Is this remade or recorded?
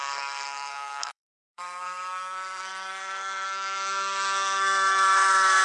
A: remade